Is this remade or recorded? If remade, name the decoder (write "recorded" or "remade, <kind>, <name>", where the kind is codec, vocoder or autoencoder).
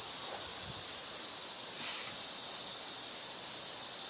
recorded